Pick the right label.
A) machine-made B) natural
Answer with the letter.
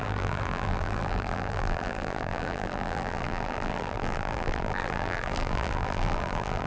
A